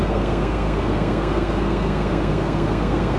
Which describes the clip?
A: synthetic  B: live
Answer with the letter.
A